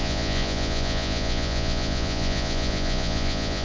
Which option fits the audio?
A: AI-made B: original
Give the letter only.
A